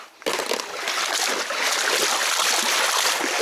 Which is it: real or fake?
real